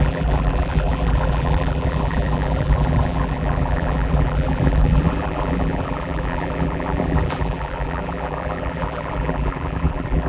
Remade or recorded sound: remade